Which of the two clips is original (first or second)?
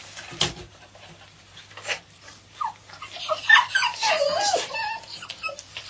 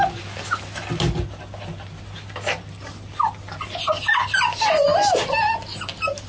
second